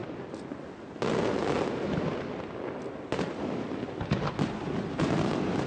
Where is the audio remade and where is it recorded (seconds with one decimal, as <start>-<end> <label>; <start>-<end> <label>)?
0.0-5.7 recorded